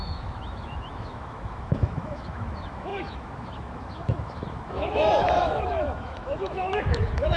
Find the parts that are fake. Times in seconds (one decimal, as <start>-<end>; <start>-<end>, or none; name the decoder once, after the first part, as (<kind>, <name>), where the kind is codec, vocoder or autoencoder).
0.0-7.4 (autoencoder, DAC-VAE)